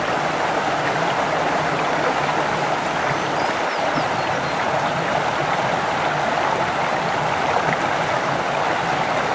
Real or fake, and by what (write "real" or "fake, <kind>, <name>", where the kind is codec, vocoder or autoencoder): real